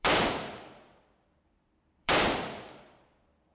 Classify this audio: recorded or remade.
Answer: remade